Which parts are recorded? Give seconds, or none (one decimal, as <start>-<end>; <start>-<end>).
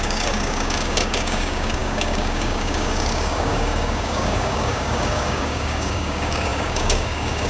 none